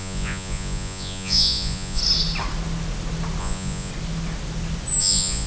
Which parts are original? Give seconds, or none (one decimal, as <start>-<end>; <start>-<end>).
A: 2.0-3.4; 3.9-5.0